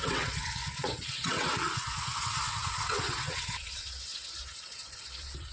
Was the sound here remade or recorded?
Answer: remade